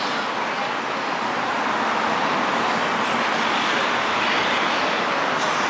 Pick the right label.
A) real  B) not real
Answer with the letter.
A